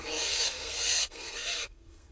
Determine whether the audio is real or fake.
fake